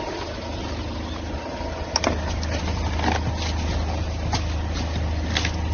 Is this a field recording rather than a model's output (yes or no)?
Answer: yes